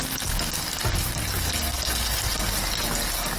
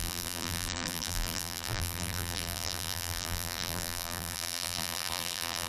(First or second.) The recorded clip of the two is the first